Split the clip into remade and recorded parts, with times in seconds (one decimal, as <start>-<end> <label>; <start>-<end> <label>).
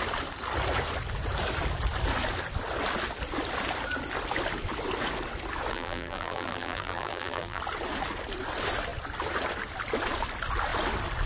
0.0-5.7 recorded; 5.7-7.6 remade; 7.6-11.3 recorded